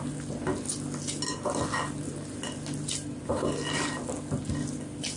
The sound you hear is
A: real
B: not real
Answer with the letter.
A